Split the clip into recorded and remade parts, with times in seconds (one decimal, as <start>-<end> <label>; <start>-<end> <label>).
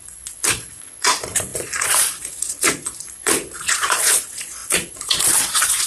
0.0-5.9 remade